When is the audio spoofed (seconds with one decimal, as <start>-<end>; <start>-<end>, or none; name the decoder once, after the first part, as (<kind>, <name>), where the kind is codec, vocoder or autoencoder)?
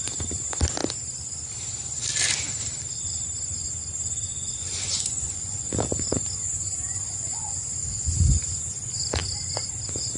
4.3-7.8 (vocoder, Vocos); 9.2-9.7